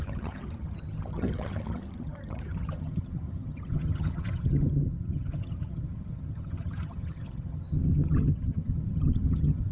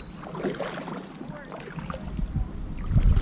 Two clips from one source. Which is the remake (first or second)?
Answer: first